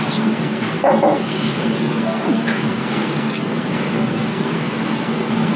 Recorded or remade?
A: remade